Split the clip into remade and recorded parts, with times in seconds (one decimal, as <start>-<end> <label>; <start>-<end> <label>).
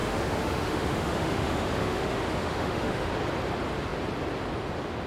0.0-3.1 remade; 3.1-5.1 recorded